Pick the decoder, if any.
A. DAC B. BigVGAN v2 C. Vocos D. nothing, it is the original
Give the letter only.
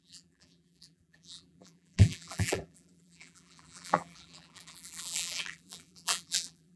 B